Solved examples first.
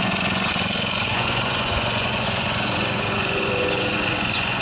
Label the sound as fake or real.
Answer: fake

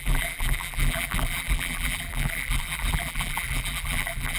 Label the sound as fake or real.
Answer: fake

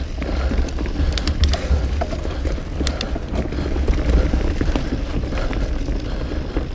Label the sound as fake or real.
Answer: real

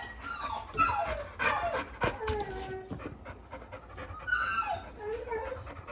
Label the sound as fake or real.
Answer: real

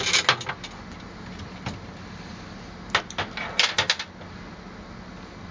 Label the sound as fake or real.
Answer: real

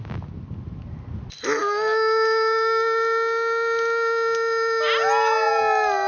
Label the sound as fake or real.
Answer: real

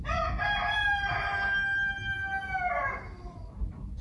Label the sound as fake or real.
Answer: real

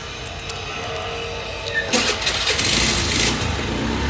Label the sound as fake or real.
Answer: real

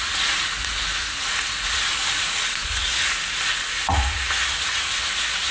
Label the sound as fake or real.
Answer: fake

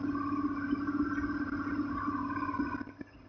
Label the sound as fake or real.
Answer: real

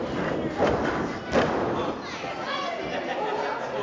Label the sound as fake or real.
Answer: real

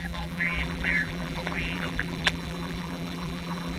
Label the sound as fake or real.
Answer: fake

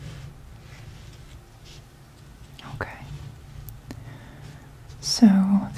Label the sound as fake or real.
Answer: real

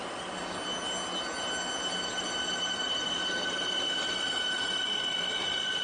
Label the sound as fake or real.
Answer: real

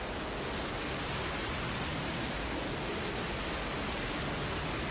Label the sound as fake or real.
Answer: real